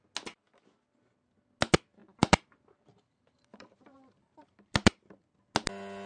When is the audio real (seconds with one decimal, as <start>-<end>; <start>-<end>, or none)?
0.0-2.0; 5.0-6.1